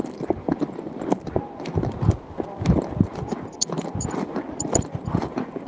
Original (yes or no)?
yes